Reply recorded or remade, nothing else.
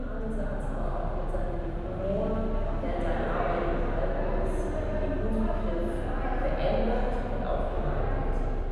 recorded